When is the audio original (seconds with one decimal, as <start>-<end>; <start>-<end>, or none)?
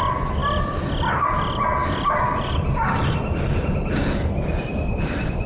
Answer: 0.0-5.5